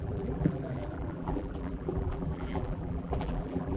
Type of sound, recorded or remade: remade